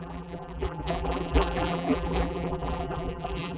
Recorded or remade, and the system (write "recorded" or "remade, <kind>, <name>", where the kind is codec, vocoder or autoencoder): remade, vocoder, BigVGAN v2